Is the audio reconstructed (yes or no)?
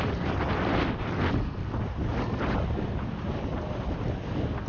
no